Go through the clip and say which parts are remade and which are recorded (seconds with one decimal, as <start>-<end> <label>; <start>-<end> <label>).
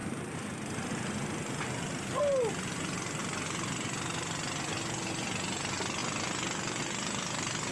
0.0-7.7 recorded